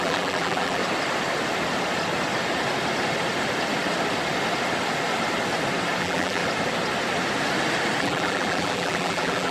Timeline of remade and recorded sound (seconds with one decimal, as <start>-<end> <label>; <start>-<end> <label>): 0.0-0.8 remade; 0.8-6.0 recorded; 6.0-6.4 remade; 6.4-8.0 recorded; 8.0-9.5 remade